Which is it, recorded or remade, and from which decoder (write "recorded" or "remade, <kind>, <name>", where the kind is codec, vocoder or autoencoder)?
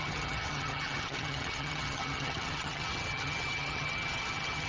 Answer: remade, vocoder, HiFi-GAN